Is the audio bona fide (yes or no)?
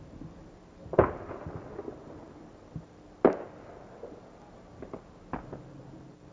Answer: yes